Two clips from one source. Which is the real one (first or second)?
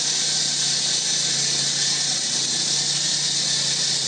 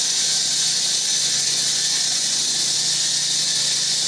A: first